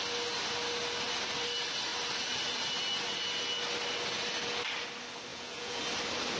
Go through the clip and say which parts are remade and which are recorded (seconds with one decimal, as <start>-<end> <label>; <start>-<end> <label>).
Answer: 0.0-5.3 recorded; 5.3-5.8 remade; 5.8-6.4 recorded